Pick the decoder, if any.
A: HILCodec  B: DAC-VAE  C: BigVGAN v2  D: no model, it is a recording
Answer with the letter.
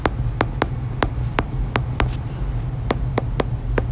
D